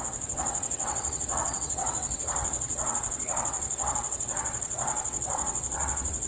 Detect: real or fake fake